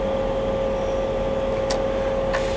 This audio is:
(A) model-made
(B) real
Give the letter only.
B